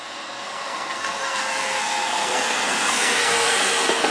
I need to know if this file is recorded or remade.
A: remade